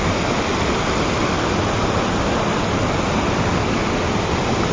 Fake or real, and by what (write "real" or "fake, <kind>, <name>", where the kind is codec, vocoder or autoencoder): real